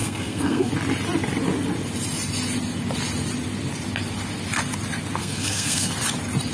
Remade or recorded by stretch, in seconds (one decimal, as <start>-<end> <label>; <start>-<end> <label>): 0.0-0.7 remade; 0.7-5.2 recorded; 5.2-5.9 remade; 5.9-6.5 recorded